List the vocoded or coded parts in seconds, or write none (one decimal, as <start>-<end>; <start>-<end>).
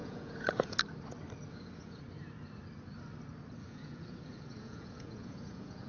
0.0-0.8; 1.5-2.0; 3.6-5.9